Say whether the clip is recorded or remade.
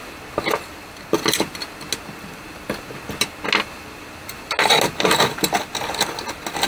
recorded